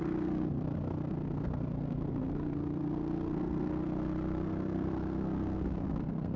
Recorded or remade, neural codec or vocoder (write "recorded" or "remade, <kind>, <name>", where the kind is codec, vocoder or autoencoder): remade, codec, SNAC